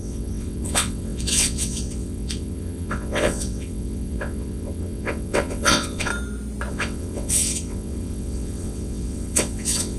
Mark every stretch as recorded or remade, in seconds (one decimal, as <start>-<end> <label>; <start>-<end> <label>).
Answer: 0.0-6.1 remade; 6.1-6.7 recorded; 6.7-10.0 remade